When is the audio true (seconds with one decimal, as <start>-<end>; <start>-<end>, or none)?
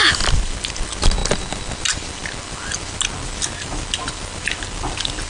0.0-5.3